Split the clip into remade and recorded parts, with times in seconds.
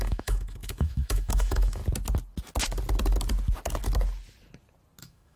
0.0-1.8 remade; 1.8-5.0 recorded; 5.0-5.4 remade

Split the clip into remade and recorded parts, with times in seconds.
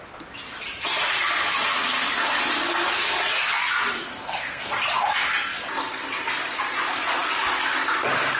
0.0-4.1 recorded; 4.1-4.6 remade; 4.6-8.4 recorded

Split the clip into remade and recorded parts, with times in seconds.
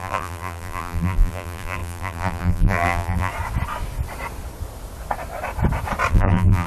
0.0-3.3 remade; 3.3-6.1 recorded; 6.1-6.7 remade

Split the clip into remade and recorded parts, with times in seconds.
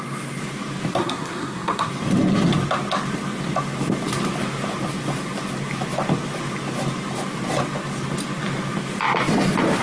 0.0-1.0 recorded; 1.0-1.9 remade; 1.9-9.8 recorded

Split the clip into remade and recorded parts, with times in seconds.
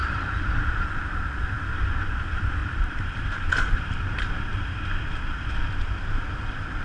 0.0-1.6 remade; 1.6-2.6 recorded; 2.6-4.3 remade; 4.3-6.8 recorded